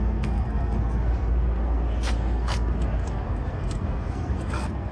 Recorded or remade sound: remade